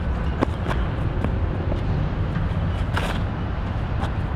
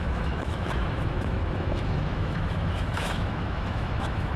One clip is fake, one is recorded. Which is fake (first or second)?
second